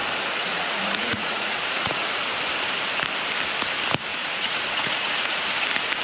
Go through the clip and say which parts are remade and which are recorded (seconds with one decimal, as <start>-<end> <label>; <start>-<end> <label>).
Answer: 0.0-0.5 recorded; 0.5-2.3 remade; 2.3-4.1 recorded; 4.1-5.4 remade; 5.4-6.0 recorded